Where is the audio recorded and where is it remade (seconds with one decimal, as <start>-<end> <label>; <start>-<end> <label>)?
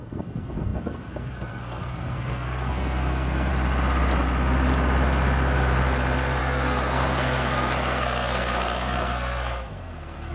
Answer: 0.0-3.5 remade; 3.5-6.4 recorded; 6.4-10.3 remade